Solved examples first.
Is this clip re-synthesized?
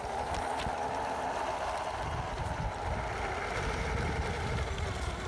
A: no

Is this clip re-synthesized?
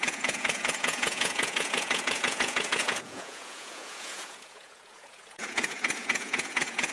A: yes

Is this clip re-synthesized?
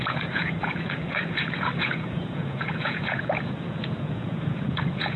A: yes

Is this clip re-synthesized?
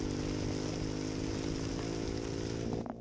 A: no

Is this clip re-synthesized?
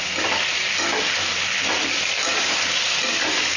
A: no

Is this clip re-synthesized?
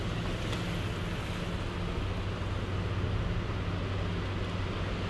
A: no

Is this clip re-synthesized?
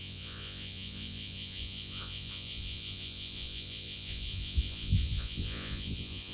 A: yes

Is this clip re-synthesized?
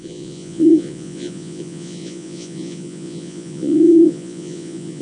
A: yes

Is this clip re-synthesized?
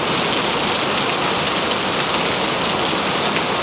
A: no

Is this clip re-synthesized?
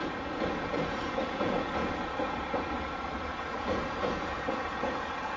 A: yes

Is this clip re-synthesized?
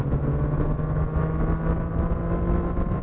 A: no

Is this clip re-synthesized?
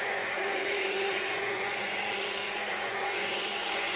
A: yes